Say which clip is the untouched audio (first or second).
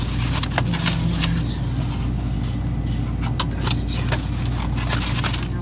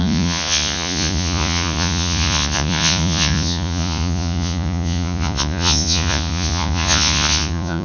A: first